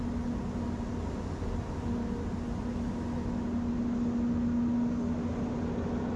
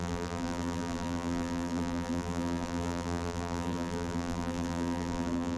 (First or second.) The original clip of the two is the first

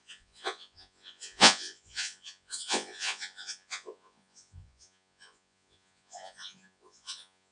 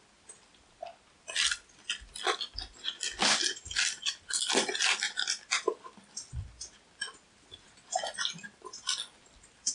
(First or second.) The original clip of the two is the second